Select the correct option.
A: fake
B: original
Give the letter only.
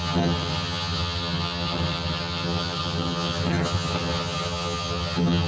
A